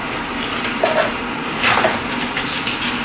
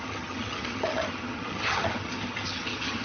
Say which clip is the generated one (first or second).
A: second